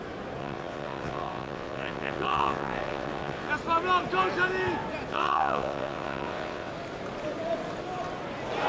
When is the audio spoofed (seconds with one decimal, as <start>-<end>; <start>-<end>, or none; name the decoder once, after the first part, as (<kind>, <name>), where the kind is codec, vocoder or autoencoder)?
0.4-3.5 (vocoder, WaveNeXt); 5.1-6.7